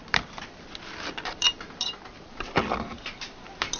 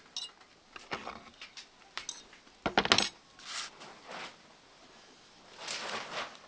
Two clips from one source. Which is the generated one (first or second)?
first